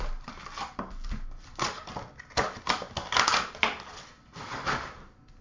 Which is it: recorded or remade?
recorded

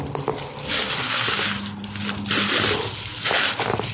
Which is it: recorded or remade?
recorded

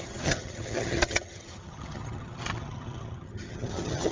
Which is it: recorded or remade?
remade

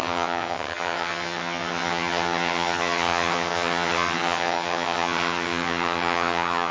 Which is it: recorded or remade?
remade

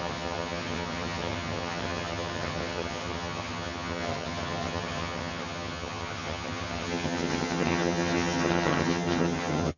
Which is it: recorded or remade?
remade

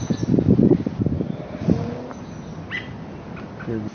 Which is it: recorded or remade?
recorded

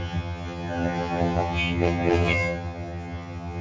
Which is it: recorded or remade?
remade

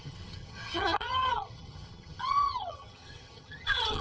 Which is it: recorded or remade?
remade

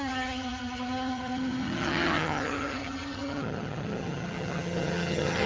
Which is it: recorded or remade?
remade